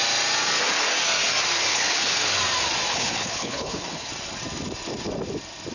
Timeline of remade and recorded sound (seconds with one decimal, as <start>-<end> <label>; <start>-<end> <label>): 0.0-1.7 recorded; 1.7-2.3 remade; 2.3-2.9 recorded; 2.9-4.1 remade; 4.1-5.7 recorded